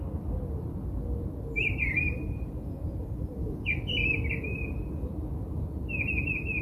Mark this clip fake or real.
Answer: real